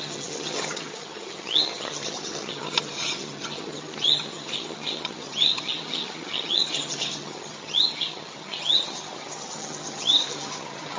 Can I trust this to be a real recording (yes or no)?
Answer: no